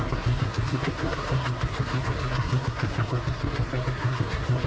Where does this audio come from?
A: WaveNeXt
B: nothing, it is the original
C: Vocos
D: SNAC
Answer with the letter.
D